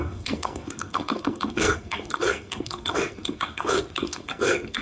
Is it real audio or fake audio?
fake